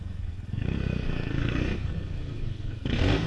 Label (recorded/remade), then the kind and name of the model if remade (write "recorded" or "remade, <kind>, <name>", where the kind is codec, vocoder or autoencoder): remade, codec, SNAC